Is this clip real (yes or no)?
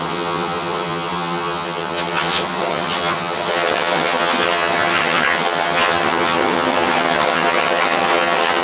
no